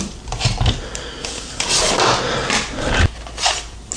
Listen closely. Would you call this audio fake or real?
real